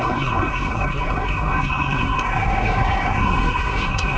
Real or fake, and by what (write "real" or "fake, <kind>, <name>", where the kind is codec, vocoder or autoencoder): fake, codec, SNAC